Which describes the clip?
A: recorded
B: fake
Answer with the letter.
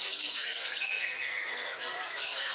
B